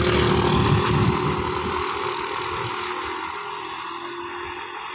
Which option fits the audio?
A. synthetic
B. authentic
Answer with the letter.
B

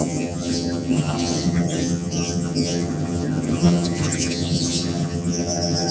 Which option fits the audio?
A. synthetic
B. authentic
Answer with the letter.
A